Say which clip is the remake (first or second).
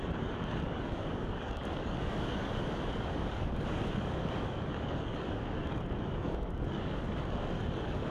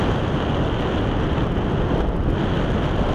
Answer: first